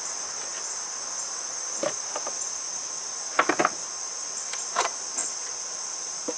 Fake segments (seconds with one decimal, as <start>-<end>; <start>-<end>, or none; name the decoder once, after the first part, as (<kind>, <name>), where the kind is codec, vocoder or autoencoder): 5.2-6.4 (vocoder, BigVGAN v2)